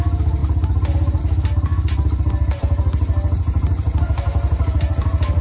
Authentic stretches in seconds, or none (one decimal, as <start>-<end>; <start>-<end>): 0.0-5.4